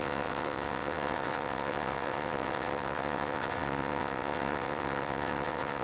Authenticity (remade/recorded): remade